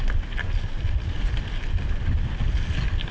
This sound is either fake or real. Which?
real